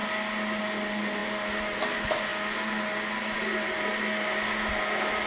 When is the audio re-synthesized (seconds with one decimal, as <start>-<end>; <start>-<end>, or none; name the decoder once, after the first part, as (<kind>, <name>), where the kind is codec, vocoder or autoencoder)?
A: none